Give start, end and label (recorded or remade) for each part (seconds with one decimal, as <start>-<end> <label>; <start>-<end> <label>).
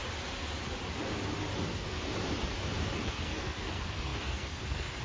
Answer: 0.0-3.0 recorded; 3.0-5.0 remade